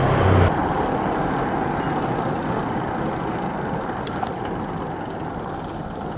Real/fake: real